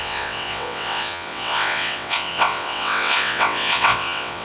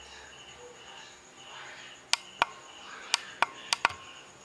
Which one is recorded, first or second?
second